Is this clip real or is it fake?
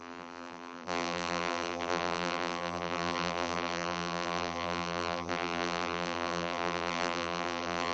fake